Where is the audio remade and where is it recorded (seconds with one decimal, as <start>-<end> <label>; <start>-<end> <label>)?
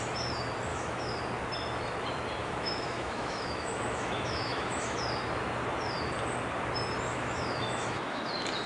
0.0-0.7 recorded; 0.7-1.2 remade; 1.2-2.4 recorded; 2.4-5.0 remade; 5.0-7.1 recorded; 7.1-8.2 remade; 8.2-8.7 recorded